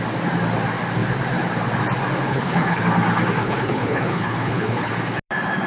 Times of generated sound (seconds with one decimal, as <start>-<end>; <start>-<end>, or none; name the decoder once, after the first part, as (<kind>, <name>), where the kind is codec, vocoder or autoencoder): 2.3-2.8 (codec, HILCodec); 3.4-4.9